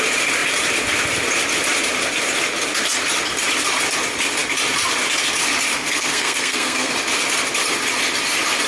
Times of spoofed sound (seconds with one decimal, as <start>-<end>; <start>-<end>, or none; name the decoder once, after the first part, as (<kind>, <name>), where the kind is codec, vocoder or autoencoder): 5.7-6.9 (codec, SNAC)

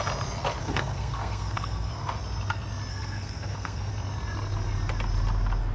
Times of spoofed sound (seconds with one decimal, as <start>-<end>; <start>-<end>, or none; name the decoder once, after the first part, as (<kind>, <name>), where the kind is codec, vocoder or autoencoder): 0.6-1.9 (codec, SNAC); 2.9-3.9

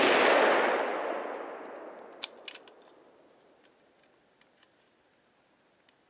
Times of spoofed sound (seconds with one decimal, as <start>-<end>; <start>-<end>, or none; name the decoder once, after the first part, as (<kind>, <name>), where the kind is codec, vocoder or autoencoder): none

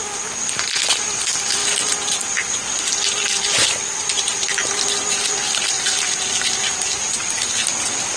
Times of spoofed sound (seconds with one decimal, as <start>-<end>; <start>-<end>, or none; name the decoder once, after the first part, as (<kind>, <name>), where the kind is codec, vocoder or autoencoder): none